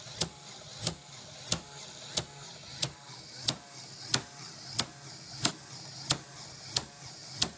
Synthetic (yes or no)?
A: no